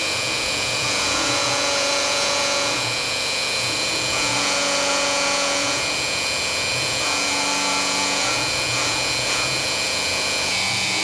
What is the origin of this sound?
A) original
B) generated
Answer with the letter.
B